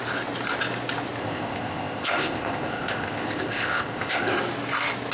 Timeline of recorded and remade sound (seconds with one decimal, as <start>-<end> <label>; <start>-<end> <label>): 0.0-1.2 recorded; 1.2-4.3 remade; 4.3-5.1 recorded